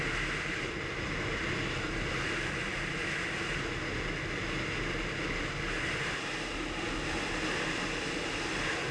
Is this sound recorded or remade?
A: recorded